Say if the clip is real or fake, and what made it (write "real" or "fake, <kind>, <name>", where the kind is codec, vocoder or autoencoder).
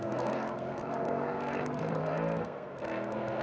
fake, codec, SNAC